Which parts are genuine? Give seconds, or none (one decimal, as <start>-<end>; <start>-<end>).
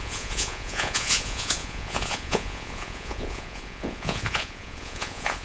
none